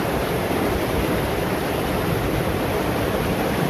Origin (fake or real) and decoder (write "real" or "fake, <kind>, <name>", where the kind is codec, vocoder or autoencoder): real